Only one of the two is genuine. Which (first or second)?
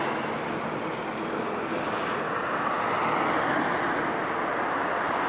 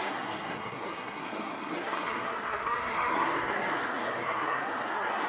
first